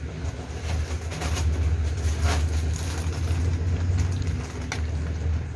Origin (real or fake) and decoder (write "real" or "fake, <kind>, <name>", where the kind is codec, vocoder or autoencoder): real